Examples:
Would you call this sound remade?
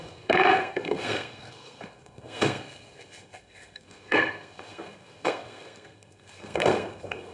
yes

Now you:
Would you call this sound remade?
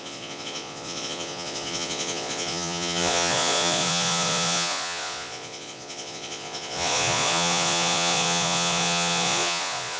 yes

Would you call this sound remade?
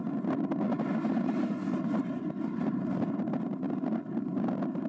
no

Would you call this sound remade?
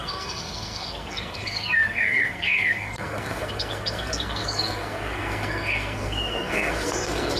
yes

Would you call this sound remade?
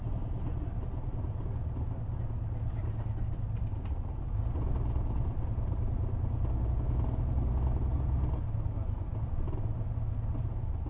no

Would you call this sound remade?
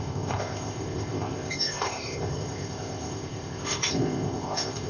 yes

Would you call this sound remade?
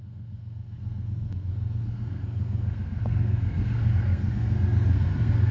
yes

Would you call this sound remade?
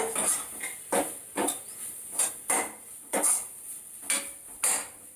no